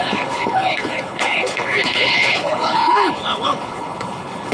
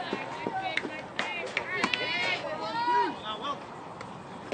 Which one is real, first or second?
second